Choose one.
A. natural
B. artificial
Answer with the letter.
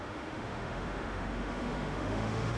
B